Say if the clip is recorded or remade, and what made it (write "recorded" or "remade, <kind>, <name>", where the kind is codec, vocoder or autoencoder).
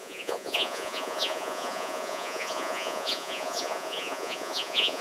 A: remade, vocoder, Vocos